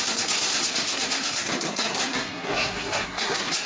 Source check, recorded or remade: remade